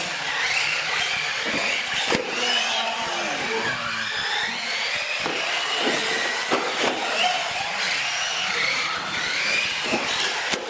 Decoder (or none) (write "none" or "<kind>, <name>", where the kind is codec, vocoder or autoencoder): none